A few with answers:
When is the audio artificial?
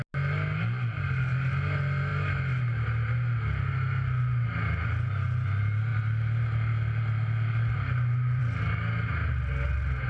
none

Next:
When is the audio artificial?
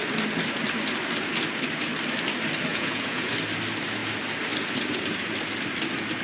2.7-3.3 (vocoder, Vocos)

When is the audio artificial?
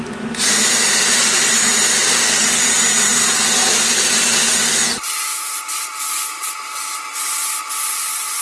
none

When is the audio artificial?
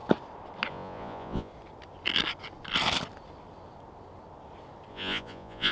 0.7-1.5 (vocoder, Vocos); 4.9-5.7